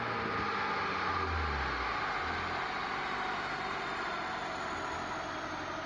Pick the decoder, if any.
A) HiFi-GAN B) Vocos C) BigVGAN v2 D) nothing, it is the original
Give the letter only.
D